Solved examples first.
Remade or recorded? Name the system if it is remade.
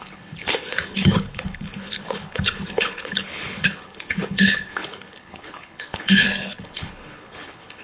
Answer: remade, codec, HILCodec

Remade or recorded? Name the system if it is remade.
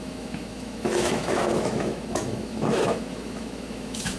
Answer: remade, autoencoder, DAC-VAE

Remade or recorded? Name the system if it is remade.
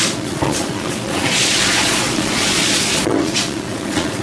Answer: remade, vocoder, Vocos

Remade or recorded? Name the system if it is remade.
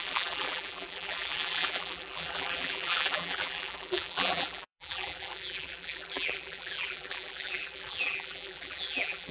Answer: remade, vocoder, BigVGAN v2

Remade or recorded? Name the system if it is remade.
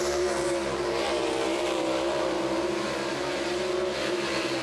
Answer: remade, vocoder, BigVGAN v2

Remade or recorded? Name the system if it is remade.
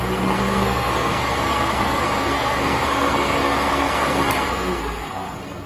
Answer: remade, codec, SNAC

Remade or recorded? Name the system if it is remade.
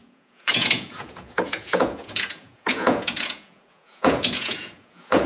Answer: remade, vocoder, Vocos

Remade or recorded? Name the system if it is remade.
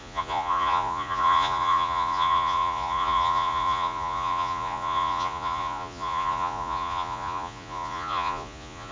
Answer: remade, vocoder, Vocos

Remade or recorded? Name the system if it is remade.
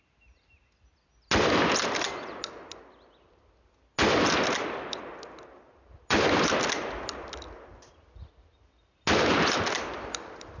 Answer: recorded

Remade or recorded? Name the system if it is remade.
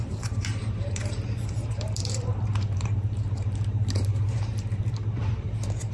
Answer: remade, vocoder, BigVGAN v2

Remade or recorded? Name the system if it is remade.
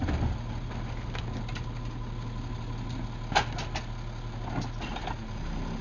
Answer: recorded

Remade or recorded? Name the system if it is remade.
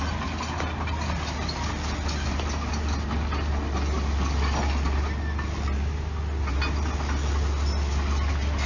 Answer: recorded